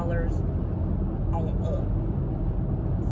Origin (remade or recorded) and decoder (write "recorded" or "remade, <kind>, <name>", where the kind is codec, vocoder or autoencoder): recorded